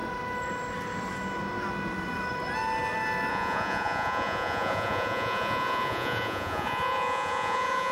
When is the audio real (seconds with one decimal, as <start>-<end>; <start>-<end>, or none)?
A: 0.0-3.3